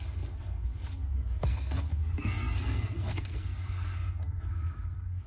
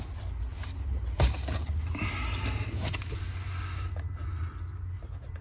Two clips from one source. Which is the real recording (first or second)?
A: second